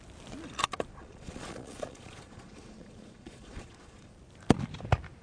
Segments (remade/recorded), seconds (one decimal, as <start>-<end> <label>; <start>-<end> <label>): 0.0-1.0 recorded; 1.0-4.1 remade; 4.1-5.2 recorded